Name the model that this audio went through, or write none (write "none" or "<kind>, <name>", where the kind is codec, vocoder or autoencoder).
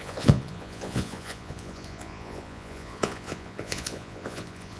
vocoder, Vocos